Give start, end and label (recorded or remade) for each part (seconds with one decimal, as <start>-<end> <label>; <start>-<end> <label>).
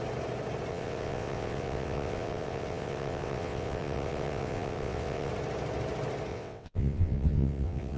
0.0-0.7 recorded; 0.7-5.3 remade; 5.3-6.3 recorded; 6.3-8.0 remade